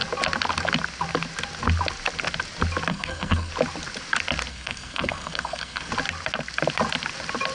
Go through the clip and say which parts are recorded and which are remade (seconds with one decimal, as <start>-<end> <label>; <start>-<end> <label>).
0.0-2.9 recorded; 2.9-3.5 remade; 3.5-4.5 recorded; 4.5-5.9 remade; 5.9-7.5 recorded